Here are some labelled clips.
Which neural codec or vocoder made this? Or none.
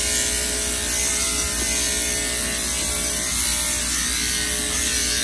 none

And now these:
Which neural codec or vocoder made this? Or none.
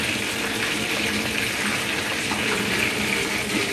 none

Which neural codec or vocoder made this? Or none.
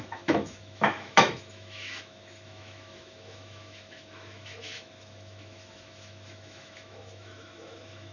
autoencoder, DAC-VAE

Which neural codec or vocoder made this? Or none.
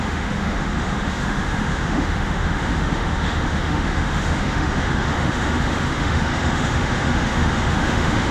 autoencoder, DAC-VAE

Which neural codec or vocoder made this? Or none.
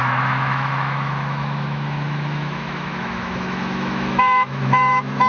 autoencoder, DAC-VAE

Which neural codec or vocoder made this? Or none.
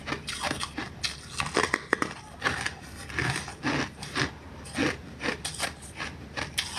none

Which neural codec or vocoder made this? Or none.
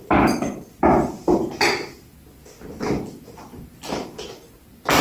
none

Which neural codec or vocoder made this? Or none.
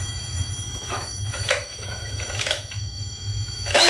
autoencoder, DAC-VAE